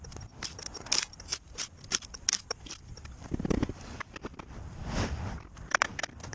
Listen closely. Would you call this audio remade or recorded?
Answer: remade